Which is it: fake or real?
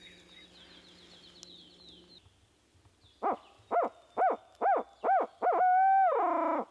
real